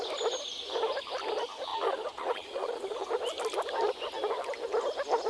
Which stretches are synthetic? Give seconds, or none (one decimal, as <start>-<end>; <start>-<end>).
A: 1.7-3.1